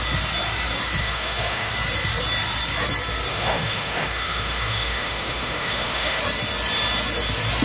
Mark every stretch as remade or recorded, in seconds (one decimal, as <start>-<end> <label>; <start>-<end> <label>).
0.0-1.0 recorded; 1.0-1.7 remade; 1.7-3.3 recorded; 3.3-6.2 remade; 6.2-7.6 recorded